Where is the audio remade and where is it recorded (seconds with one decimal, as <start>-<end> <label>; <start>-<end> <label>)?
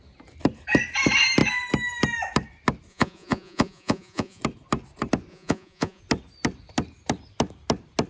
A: 0.0-2.9 recorded; 2.9-4.4 remade; 4.4-5.3 recorded; 5.3-6.0 remade; 6.0-8.1 recorded